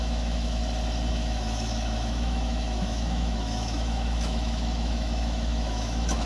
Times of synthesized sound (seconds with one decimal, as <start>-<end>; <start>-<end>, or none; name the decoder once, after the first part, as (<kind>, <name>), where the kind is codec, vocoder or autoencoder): 0.0-0.6 (autoencoder, DAC-VAE); 1.1-6.3